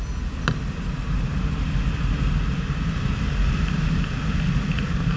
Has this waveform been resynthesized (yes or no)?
no